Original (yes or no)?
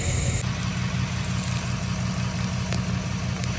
yes